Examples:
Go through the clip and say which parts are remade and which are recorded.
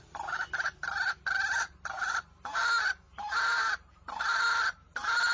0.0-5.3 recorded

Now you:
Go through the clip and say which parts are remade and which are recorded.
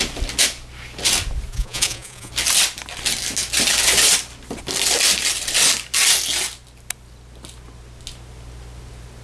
0.0-1.5 recorded; 1.5-2.3 remade; 2.3-9.2 recorded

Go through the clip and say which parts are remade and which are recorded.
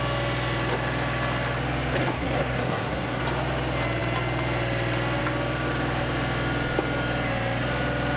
0.0-2.0 recorded; 2.0-3.2 remade; 3.2-8.2 recorded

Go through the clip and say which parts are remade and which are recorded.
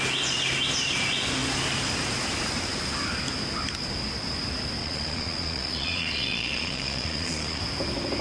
0.0-4.8 recorded; 4.8-7.6 remade; 7.6-8.2 recorded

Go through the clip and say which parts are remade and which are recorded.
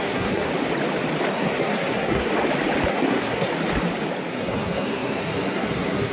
0.0-0.5 remade; 0.5-1.3 recorded; 1.3-2.3 remade; 2.3-2.9 recorded; 2.9-3.5 remade; 3.5-4.3 recorded; 4.3-6.1 remade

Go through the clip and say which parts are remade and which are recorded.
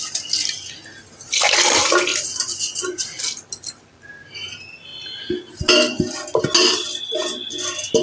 0.0-8.0 recorded